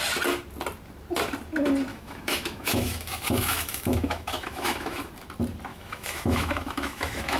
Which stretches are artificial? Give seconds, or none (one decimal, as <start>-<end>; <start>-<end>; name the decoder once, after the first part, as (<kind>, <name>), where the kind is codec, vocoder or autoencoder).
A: 1.9-5.1 (autoencoder, DAC-VAE); 5.7-7.4

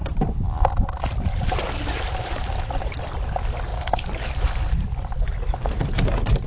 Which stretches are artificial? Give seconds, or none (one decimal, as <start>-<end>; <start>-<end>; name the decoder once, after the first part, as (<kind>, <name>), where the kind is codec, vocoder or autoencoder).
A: 0.0-3.0 (vocoder, BigVGAN v2); 3.7-4.3

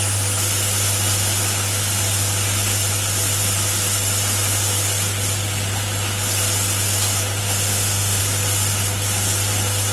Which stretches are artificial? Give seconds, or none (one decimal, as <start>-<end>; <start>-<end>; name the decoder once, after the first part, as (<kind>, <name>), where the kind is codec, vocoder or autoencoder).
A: 7.4-8.2 (autoencoder, DAC-VAE)

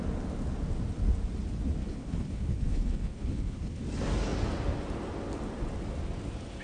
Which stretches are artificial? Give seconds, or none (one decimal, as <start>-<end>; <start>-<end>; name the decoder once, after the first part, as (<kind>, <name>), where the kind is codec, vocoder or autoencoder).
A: 1.8-3.8 (codec, HILCodec)

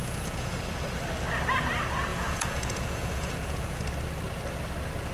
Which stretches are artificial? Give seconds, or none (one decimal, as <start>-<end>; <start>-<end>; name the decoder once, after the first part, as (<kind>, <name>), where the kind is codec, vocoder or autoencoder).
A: 0.0-0.6 (vocoder, Vocos); 2.1-3.8

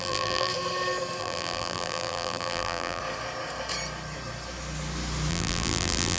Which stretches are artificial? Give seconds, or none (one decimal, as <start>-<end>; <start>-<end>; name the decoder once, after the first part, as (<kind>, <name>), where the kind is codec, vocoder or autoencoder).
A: 0.0-0.5 (vocoder, BigVGAN v2); 1.2-3.0; 5.3-6.2

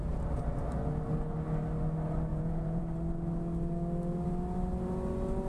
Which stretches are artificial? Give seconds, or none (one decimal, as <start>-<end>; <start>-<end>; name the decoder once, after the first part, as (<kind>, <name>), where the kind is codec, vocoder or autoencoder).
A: 2.3-2.8 (vocoder, Vocos)